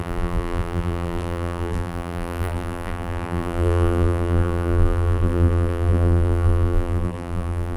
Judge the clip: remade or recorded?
remade